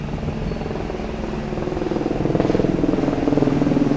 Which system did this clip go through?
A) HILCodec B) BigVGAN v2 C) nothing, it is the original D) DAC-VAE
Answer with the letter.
C